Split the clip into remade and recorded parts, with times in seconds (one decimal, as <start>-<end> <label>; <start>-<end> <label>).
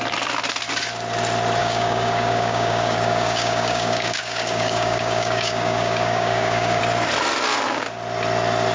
0.0-1.6 recorded; 1.6-6.8 remade; 6.8-8.7 recorded